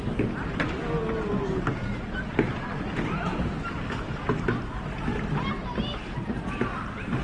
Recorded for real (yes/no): yes